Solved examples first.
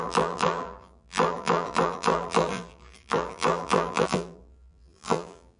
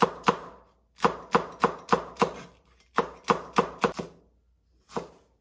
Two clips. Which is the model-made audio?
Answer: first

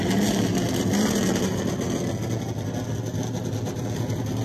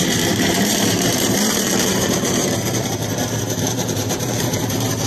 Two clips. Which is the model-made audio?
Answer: second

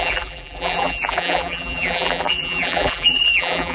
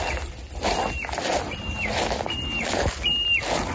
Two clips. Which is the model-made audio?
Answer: first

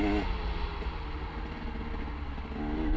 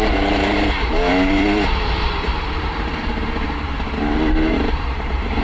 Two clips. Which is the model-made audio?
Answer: second